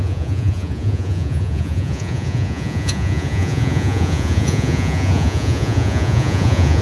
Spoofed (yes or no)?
yes